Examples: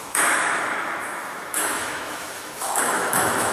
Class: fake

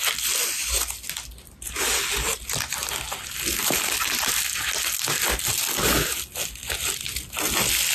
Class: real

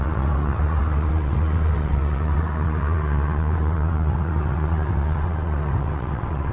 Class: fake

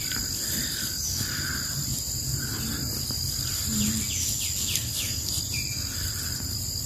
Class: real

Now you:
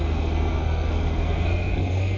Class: fake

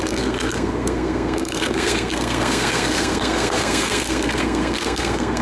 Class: fake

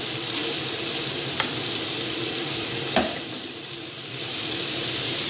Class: fake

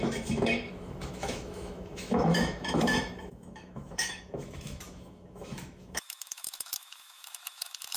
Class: fake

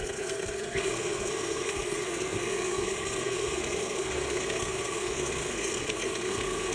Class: fake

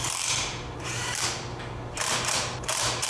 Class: fake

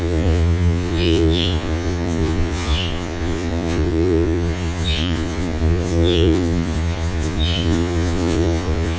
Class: fake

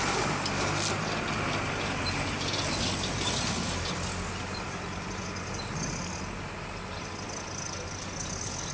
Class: real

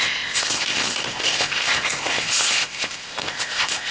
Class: fake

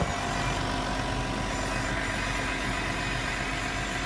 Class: real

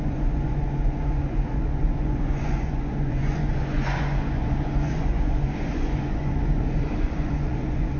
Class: fake